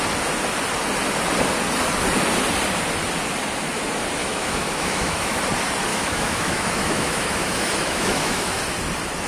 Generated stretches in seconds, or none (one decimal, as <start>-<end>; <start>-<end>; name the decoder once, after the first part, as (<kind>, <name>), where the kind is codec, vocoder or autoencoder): 4.2-5.4 (autoencoder, DAC-VAE); 5.9-8.6

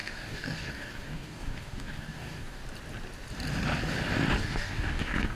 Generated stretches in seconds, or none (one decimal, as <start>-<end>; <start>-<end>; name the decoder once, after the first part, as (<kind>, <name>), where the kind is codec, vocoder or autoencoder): 0.0-2.6 (codec, DAC); 4.4-5.4

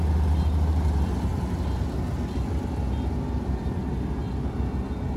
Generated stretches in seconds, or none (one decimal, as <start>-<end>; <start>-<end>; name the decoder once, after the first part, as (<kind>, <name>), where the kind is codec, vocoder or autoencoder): none

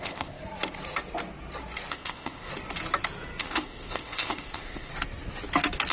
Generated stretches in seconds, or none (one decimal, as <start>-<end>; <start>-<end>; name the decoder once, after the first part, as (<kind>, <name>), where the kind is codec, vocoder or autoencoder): 0.0-0.4 (codec, ZipCodec); 1.9-2.5; 3.4-4.9

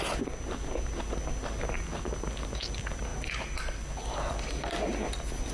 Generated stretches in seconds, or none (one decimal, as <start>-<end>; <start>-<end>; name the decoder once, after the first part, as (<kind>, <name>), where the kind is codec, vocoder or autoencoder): none

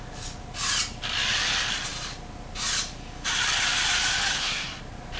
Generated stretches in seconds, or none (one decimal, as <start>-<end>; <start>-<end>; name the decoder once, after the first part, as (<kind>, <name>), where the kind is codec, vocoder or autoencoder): 4.3-4.8 (codec, SNAC)